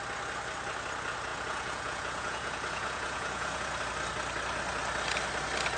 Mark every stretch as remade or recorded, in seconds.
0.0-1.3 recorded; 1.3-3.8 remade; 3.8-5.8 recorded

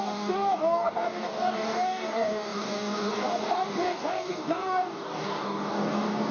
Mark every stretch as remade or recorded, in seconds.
0.0-6.3 remade